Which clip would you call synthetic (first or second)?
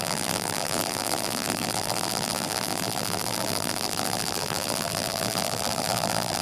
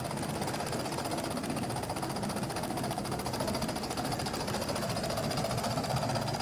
first